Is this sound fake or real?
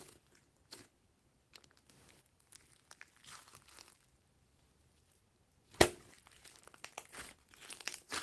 real